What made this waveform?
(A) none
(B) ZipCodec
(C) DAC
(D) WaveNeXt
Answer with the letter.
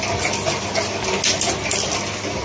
A